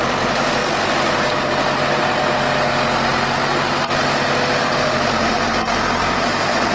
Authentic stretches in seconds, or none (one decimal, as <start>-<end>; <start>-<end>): 0.6-4.6